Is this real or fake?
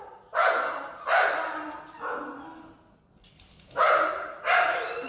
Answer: real